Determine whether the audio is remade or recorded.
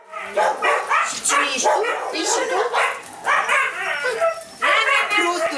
recorded